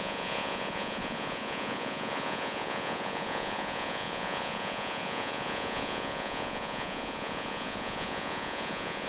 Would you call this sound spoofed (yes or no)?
yes